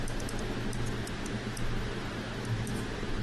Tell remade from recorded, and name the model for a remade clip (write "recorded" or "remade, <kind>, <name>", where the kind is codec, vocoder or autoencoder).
recorded